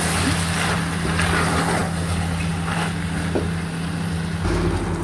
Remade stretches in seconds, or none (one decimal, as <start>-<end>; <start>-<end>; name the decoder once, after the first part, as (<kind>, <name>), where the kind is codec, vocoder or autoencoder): none